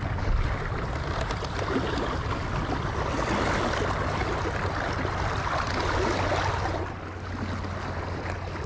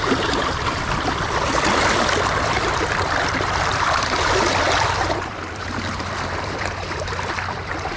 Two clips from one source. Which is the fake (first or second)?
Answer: second